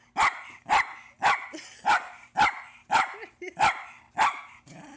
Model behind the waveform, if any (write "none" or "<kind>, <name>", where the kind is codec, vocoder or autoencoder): none